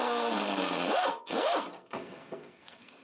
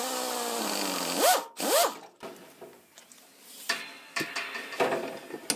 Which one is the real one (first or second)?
second